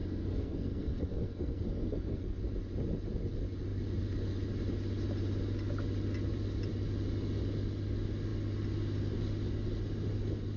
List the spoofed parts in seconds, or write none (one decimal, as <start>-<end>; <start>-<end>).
0.0-2.4